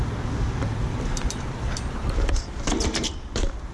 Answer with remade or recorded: remade